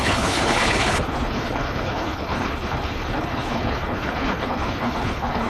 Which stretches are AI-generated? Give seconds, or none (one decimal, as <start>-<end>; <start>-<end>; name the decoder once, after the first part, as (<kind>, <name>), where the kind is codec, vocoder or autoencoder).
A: 0.0-5.5 (codec, HILCodec)